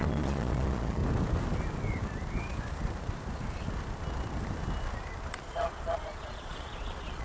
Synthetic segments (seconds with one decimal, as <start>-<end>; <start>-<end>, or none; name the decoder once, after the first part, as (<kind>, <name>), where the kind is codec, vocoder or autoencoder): 0.0-1.0 (vocoder, Vocos); 5.3-7.2